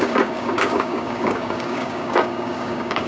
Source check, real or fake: fake